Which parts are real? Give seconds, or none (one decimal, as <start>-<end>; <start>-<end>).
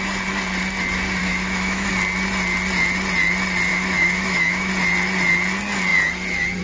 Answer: 0.0-1.2; 1.9-3.7; 4.7-6.6